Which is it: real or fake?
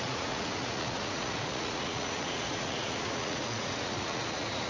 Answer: fake